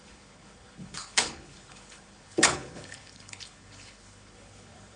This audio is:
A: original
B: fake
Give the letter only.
B